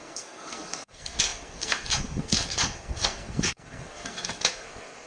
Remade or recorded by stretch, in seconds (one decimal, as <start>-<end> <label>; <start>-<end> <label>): 0.0-5.1 remade